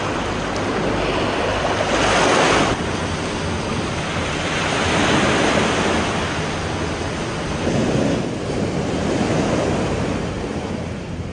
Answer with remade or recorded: recorded